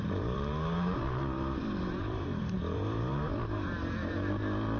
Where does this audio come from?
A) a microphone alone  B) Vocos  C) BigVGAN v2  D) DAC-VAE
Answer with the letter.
C